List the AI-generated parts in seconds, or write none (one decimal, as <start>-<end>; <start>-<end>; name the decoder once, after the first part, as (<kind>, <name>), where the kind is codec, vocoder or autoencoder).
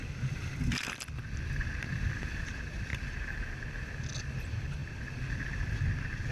0.0-2.9 (vocoder, BigVGAN v2); 4.2-4.8